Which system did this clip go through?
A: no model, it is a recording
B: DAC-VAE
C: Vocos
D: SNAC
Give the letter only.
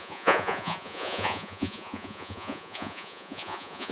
C